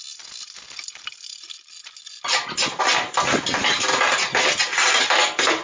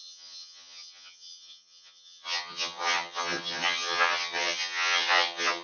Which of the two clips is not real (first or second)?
second